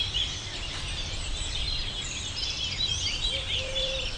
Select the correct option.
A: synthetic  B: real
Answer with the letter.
A